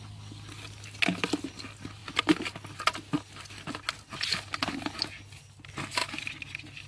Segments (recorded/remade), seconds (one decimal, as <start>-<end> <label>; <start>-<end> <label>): 0.0-6.9 recorded